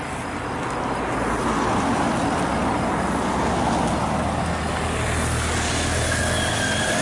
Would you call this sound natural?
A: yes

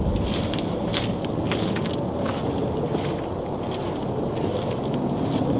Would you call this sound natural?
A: yes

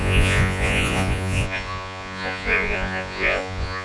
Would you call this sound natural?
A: no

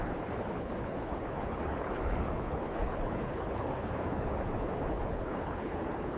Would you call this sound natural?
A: no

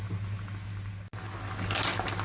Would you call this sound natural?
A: yes